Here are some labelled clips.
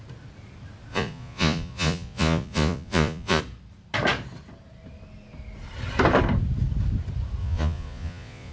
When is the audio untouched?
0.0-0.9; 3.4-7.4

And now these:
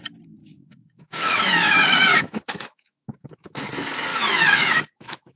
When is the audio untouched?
0.0-0.4; 3.6-4.1

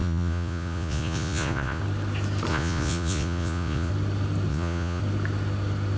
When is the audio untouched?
1.8-2.5; 3.9-4.5; 5.0-6.0

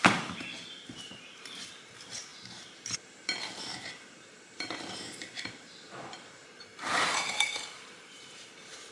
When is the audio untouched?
none

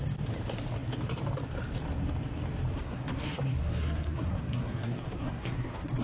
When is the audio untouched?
0.0-2.7

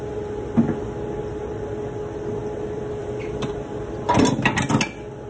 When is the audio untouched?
0.0-3.0; 3.5-5.3

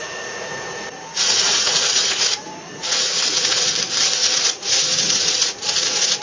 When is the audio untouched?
3.7-4.2

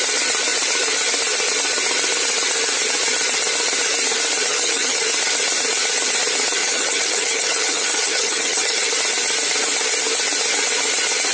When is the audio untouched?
0.0-4.5; 5.0-6.6; 8.9-11.3